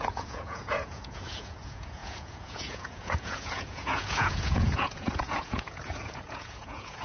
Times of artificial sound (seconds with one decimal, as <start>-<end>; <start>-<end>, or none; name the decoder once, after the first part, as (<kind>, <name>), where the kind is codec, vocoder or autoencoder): 0.0-7.0 (vocoder, Vocos)